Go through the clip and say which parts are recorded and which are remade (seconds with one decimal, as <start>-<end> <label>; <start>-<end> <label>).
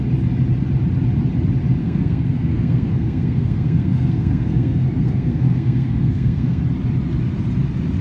0.0-1.8 recorded; 1.8-6.6 remade; 6.6-8.0 recorded